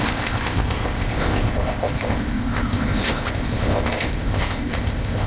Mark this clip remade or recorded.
remade